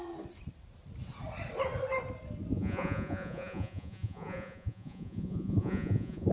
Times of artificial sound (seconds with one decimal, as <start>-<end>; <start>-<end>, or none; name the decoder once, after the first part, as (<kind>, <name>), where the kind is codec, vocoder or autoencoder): 2.5-6.3 (vocoder, Vocos)